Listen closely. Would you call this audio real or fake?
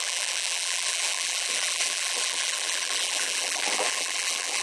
fake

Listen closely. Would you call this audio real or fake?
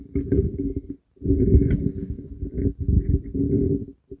real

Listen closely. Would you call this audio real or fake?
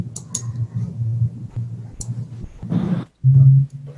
real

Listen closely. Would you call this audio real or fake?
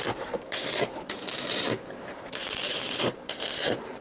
fake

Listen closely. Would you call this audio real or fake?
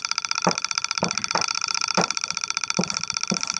fake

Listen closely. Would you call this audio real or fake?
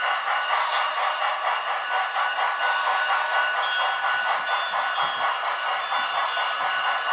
real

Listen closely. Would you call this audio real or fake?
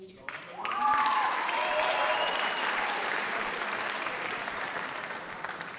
fake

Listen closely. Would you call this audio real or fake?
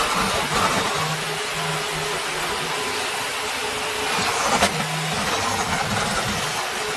real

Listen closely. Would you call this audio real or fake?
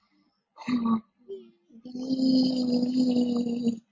real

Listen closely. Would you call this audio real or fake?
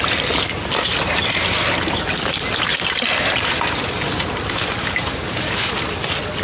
real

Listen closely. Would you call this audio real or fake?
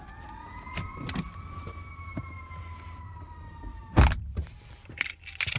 real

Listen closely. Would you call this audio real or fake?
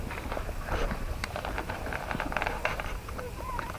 fake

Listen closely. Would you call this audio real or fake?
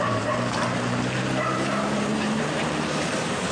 fake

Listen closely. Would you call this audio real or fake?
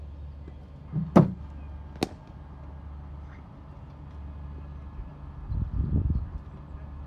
real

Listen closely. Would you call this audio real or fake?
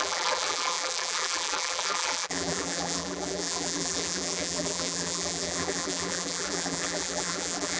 fake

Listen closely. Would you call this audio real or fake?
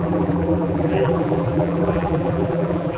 fake